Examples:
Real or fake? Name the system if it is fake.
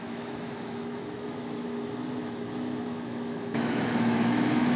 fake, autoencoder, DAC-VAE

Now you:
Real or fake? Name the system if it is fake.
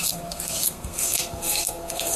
fake, codec, SNAC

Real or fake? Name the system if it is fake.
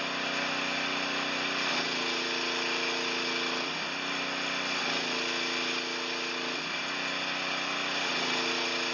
real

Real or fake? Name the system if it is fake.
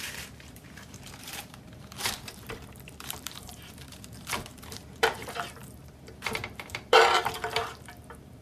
fake, vocoder, BigVGAN v2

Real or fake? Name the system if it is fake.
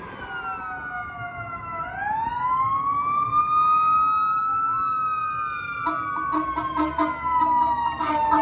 real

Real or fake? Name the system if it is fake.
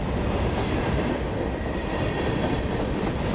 fake, vocoder, BigVGAN v2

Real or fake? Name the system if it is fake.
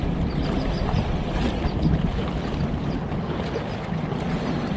real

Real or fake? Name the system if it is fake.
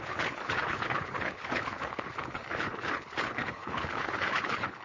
fake, codec, HILCodec